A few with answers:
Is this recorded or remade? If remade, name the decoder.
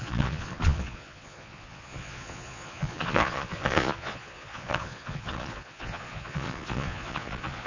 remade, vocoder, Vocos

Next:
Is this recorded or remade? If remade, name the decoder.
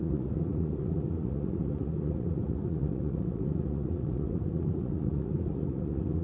remade, vocoder, Vocos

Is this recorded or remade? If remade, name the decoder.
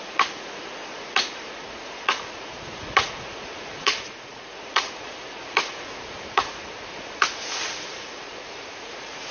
remade, vocoder, Vocos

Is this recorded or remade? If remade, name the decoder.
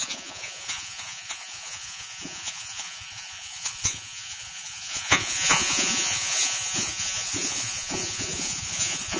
remade, vocoder, Vocos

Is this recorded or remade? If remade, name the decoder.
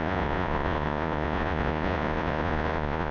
remade, vocoder, Vocos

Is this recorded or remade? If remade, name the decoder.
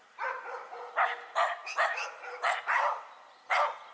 recorded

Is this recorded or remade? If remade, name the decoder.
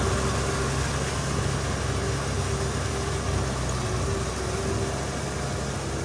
recorded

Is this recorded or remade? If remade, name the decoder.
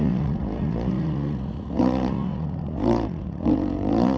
remade, vocoder, Vocos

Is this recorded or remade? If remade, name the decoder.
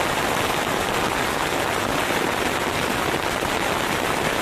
recorded